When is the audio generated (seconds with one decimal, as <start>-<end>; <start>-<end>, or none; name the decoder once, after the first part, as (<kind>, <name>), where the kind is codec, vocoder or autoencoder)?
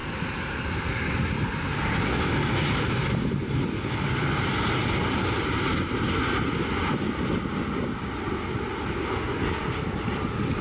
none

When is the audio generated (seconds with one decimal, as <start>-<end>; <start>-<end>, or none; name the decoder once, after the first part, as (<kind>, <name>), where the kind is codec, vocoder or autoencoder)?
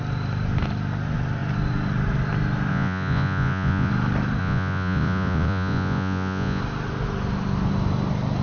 2.7-3.9 (vocoder, Vocos); 4.4-6.6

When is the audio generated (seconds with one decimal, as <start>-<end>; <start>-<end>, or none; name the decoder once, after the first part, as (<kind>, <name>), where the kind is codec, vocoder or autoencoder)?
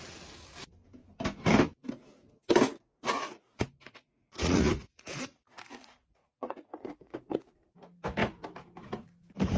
2.7-7.4 (vocoder, Vocos)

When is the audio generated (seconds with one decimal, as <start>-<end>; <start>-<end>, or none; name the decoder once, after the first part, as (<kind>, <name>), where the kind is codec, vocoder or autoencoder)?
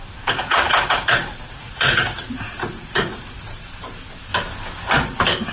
0.4-3.7 (vocoder, Vocos)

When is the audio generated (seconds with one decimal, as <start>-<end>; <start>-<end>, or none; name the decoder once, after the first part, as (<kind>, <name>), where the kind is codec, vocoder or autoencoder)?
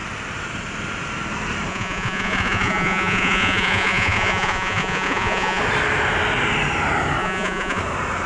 1.7-5.6 (vocoder, Vocos); 7.2-7.8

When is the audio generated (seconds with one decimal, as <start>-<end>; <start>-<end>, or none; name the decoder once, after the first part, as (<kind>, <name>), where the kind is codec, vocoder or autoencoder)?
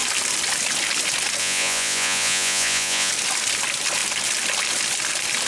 1.4-3.1 (vocoder, Vocos)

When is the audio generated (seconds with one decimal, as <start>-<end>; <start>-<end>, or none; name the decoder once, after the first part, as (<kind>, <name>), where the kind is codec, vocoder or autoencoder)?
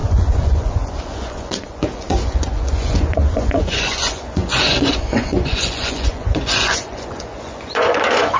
0.0-8.4 (vocoder, Vocos)